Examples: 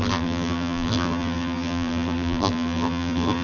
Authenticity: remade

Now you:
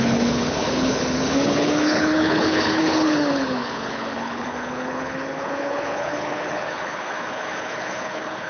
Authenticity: remade